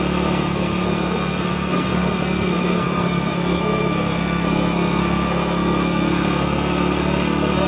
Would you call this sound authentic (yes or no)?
no